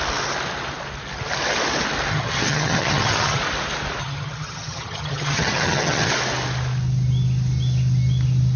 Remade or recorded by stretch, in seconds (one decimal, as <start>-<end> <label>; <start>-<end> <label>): 0.0-2.1 recorded; 2.1-3.4 remade; 3.4-4.0 recorded; 4.0-6.1 remade; 6.1-8.6 recorded